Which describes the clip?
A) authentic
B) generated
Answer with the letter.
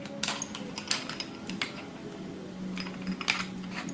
A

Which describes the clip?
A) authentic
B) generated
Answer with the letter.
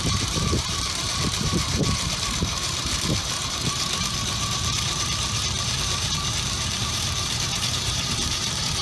B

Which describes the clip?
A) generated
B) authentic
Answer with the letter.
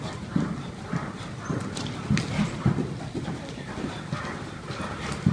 B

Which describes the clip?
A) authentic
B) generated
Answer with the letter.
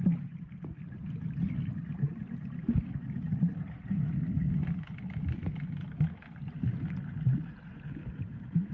A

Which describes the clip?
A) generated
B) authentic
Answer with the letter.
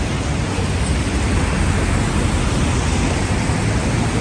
B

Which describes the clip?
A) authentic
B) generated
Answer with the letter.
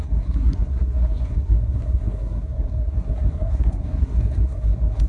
B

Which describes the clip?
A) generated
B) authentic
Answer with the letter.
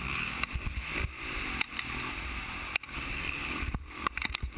A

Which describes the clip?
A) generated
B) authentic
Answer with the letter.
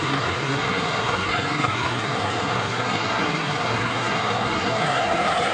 A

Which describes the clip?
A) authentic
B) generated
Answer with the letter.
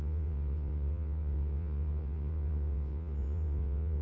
B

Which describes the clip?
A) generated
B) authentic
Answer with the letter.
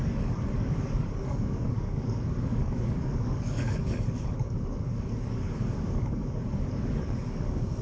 A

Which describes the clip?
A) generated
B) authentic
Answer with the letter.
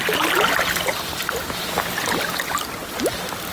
B